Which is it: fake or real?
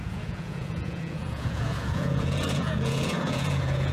fake